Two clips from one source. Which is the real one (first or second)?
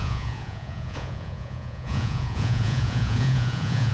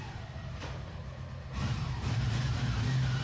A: second